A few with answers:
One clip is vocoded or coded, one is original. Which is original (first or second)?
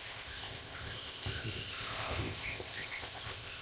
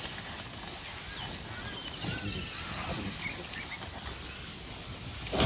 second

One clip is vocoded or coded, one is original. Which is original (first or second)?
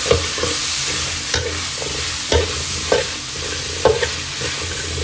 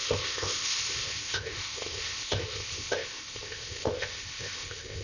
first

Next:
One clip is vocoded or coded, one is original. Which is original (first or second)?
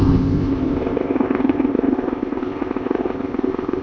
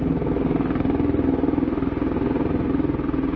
second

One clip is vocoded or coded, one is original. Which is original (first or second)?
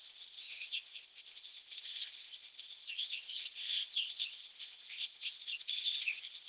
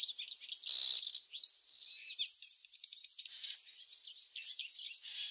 second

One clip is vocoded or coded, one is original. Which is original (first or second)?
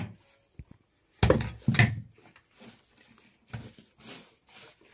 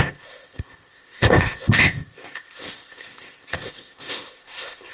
first